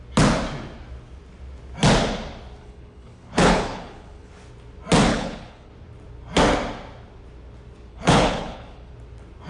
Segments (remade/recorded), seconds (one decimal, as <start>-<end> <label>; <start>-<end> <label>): 0.0-2.6 recorded; 2.6-4.3 remade; 4.3-5.1 recorded; 5.1-5.7 remade; 5.7-7.9 recorded; 7.9-8.9 remade; 8.9-9.5 recorded